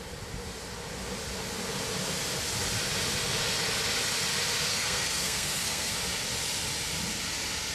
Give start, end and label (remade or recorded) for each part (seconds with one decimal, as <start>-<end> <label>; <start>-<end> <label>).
0.0-4.7 recorded; 4.7-5.9 remade; 5.9-7.7 recorded